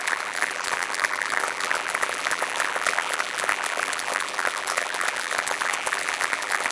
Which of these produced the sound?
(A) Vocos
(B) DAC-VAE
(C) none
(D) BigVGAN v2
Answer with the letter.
D